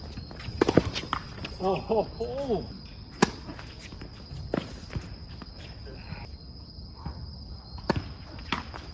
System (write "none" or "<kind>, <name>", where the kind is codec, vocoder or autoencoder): none